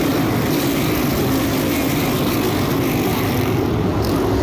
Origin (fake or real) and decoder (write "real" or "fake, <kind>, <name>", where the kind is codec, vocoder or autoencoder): real